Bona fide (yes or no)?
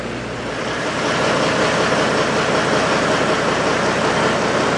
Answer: yes